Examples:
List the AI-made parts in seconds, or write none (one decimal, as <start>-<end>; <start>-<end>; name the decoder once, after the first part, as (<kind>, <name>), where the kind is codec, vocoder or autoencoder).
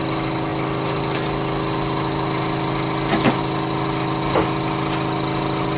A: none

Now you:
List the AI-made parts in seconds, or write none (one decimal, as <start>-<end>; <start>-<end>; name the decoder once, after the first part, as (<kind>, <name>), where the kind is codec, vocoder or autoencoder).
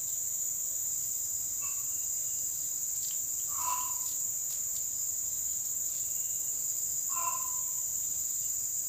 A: 0.8-2.8 (vocoder, BigVGAN v2); 7.9-8.9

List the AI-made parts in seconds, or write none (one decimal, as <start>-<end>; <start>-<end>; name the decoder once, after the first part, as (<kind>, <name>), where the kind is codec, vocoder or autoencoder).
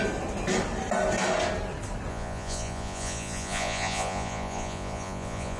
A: 2.1-5.6 (vocoder, Vocos)